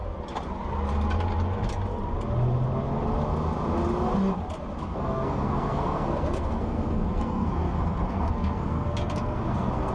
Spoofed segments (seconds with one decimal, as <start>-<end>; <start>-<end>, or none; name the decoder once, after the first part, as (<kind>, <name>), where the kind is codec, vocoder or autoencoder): 4.8-9.9 (codec, SNAC)

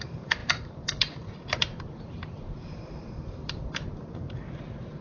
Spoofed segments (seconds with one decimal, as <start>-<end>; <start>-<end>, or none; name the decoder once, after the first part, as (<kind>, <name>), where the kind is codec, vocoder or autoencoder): 0.0-5.0 (vocoder, BigVGAN v2)

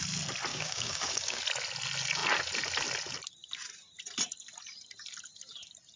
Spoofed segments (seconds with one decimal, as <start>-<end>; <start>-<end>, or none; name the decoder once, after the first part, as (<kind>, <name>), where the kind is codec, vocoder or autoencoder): 0.5-1.4 (codec, DAC)

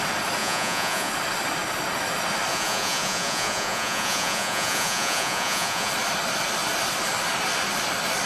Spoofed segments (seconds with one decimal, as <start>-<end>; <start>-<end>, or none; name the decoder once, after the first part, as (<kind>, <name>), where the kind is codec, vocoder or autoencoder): 0.4-1.1 (vocoder, Vocos); 2.5-5.9

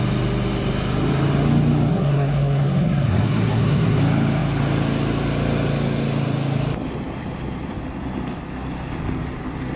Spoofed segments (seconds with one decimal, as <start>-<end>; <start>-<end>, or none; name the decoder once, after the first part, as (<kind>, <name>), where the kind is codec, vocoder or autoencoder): 1.9-4.0 (codec, SNAC)

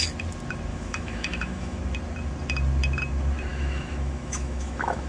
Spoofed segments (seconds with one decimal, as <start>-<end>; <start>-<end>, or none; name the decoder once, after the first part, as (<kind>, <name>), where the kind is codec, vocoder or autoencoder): 0.7-1.8 (autoencoder, DAC-VAE); 3.5-5.1

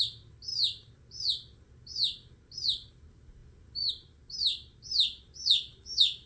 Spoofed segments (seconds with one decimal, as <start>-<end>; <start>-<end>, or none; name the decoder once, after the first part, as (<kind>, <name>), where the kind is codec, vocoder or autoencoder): none